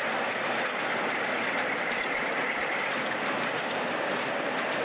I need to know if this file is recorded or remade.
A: remade